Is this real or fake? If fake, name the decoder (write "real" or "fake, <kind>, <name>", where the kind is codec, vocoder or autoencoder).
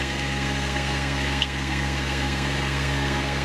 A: fake, codec, SNAC